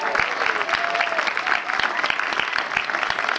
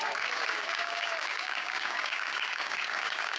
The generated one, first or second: second